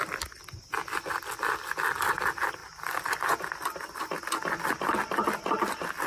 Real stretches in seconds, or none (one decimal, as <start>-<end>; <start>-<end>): 0.0-6.1